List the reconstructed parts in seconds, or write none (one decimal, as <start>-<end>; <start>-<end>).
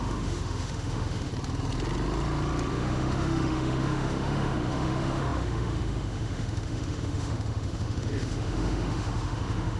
0.0-1.3; 2.7-9.8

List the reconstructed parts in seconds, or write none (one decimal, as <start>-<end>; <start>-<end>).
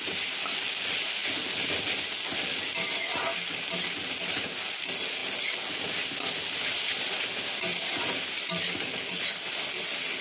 none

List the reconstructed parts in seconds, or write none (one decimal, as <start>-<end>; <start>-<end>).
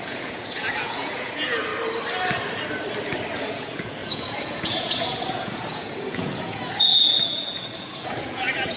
0.0-1.7; 3.4-8.8